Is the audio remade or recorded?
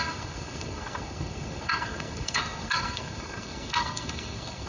remade